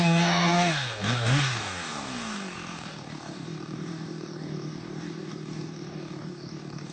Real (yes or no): no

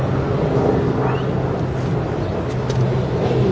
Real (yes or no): yes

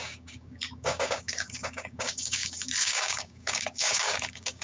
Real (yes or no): no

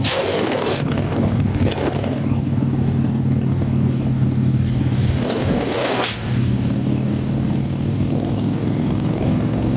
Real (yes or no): no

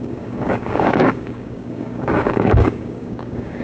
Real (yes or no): no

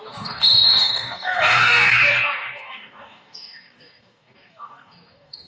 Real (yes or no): no